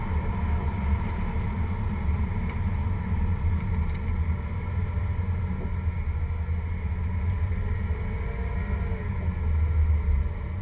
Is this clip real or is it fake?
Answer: real